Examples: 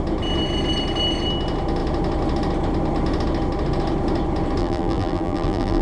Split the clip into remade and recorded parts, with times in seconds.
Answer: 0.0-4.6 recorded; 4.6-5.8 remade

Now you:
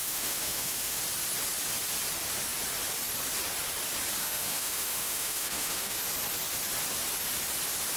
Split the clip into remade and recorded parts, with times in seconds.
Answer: 0.0-1.0 remade; 1.0-4.2 recorded; 4.2-6.0 remade; 6.0-8.0 recorded

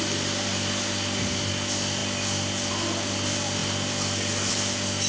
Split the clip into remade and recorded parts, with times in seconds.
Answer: 0.0-5.1 recorded

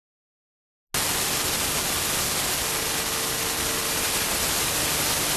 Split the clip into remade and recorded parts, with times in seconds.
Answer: 0.0-5.4 recorded

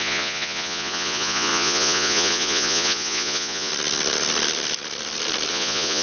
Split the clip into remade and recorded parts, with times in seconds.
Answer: 0.0-3.7 remade; 3.7-5.5 recorded; 5.5-6.0 remade

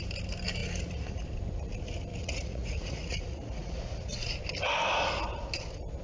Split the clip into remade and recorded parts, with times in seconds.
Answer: 0.0-0.6 recorded; 0.6-1.2 remade; 1.2-2.1 recorded; 2.1-4.4 remade; 4.4-6.0 recorded

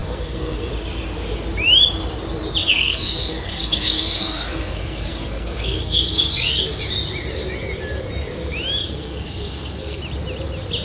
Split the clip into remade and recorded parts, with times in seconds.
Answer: 0.0-0.7 remade; 0.7-2.6 recorded; 2.6-6.8 remade; 6.8-8.8 recorded; 8.8-10.0 remade; 10.0-10.8 recorded